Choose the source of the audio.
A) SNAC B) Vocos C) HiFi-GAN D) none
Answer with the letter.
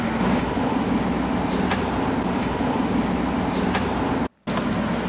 D